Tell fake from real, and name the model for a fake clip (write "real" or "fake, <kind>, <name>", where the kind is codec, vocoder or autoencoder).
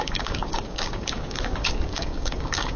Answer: fake, codec, DAC